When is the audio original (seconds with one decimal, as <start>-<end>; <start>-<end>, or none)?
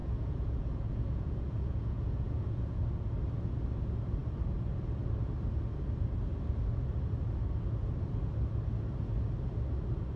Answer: 2.8-10.2